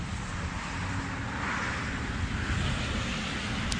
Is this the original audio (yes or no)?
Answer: yes